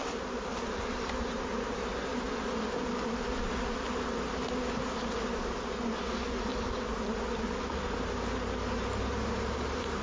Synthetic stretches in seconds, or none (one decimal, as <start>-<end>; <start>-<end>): 0.0-2.1; 4.7-6.5; 9.1-10.0

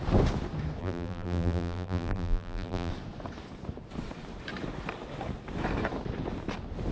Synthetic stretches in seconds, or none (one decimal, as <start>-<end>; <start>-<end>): 0.8-2.9

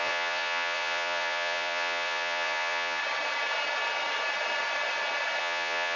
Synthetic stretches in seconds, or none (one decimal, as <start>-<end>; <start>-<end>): 0.0-3.0; 5.4-6.0

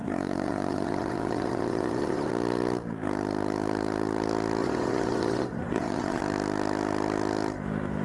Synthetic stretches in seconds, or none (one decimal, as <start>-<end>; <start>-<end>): 0.0-2.3; 4.6-6.2

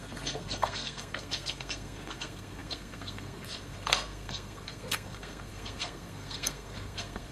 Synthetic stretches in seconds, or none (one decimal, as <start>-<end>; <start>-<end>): 0.0-7.3

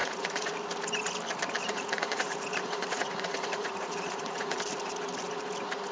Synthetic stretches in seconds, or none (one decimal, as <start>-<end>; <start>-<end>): 0.0-0.5; 1.6-4.6

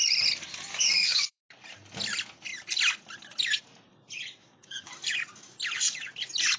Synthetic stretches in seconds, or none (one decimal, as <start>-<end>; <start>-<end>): 0.7-1.4; 4.4-4.9

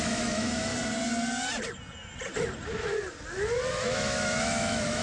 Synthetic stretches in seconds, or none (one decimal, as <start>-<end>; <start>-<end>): 0.0-0.7; 3.7-5.0